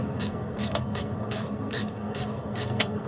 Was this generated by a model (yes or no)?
yes